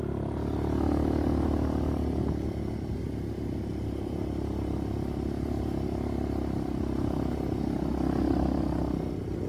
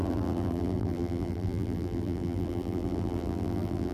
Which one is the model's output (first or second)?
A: second